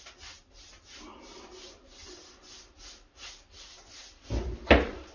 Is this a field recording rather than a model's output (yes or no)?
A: yes